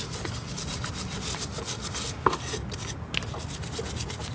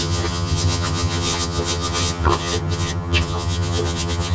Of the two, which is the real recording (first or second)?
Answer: first